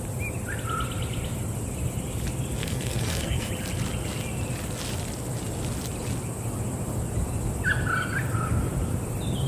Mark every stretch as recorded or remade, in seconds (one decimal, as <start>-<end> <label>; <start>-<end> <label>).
0.0-2.6 recorded; 2.6-3.5 remade; 3.5-9.5 recorded